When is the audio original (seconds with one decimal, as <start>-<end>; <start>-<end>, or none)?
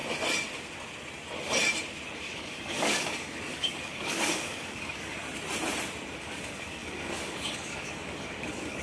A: 0.0-2.2; 5.2-6.2